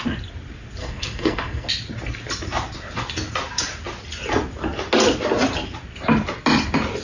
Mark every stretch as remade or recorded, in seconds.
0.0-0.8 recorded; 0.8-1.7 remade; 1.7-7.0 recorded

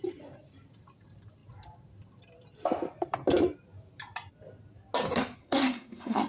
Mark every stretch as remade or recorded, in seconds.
0.0-5.4 recorded; 5.4-6.3 remade

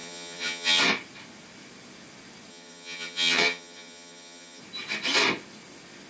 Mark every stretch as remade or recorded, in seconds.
0.0-0.8 remade; 0.8-2.5 recorded; 2.5-4.6 remade; 4.6-6.1 recorded

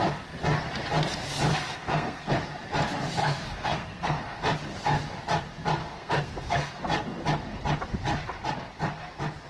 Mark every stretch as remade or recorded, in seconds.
0.0-1.5 recorded; 1.5-2.3 remade; 2.3-3.2 recorded; 3.2-4.4 remade; 4.4-5.8 recorded; 5.8-6.8 remade; 6.8-9.5 recorded

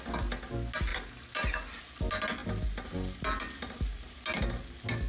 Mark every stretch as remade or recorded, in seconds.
0.0-0.9 recorded; 0.9-1.9 remade; 1.9-5.1 recorded

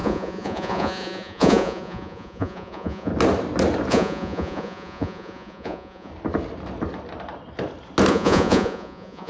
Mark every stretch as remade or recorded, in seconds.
0.0-3.1 remade; 3.1-3.9 recorded; 3.9-6.1 remade; 6.1-8.1 recorded; 8.1-9.3 remade